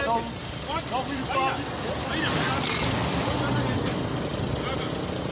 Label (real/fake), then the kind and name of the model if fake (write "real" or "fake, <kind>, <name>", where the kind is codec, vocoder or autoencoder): real